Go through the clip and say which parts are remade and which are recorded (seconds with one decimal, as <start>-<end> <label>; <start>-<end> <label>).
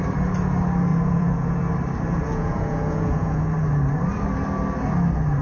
0.0-0.9 recorded; 0.9-1.6 remade; 1.6-2.1 recorded; 2.1-3.4 remade; 3.4-5.4 recorded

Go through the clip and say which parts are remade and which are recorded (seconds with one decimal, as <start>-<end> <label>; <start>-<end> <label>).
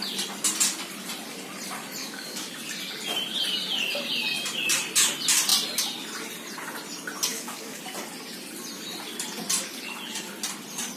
0.0-2.0 recorded; 2.0-2.5 remade; 2.5-7.3 recorded; 7.3-7.8 remade; 7.8-11.0 recorded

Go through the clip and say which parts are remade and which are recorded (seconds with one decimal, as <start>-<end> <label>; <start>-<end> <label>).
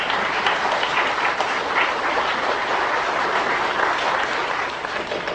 0.0-5.3 recorded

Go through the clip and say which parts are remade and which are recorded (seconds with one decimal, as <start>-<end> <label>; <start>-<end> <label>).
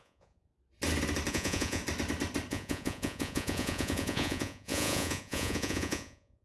0.0-0.5 remade; 0.5-1.3 recorded; 1.3-1.8 remade; 1.8-2.5 recorded; 2.5-6.4 remade